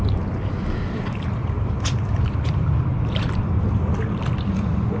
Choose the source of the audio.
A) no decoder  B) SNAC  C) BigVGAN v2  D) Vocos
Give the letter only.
C